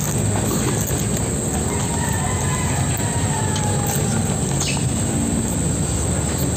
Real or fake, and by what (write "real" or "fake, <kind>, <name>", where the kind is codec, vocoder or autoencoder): real